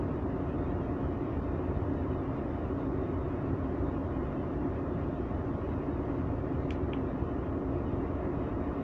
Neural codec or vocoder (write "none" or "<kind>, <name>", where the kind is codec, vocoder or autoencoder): none